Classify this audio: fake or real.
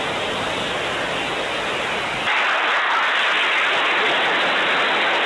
real